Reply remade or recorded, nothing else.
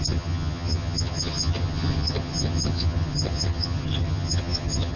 remade